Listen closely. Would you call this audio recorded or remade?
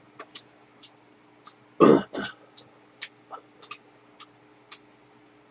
recorded